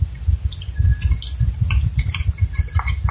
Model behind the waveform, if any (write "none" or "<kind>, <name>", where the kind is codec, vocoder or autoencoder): none